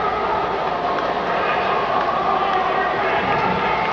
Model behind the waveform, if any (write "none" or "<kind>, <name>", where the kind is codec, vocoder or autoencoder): none